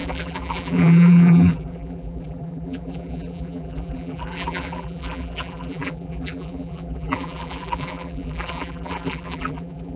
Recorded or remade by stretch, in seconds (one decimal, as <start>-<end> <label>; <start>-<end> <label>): 0.0-10.0 remade